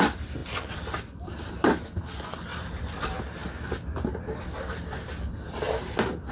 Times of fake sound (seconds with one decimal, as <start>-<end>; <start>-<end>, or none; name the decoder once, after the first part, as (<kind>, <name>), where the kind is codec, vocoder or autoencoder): 0.4-1.5 (vocoder, BigVGAN v2); 2.5-3.0